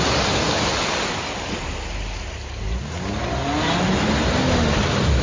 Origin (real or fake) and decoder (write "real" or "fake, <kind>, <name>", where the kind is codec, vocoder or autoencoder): real